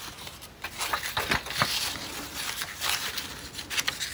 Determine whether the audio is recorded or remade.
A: recorded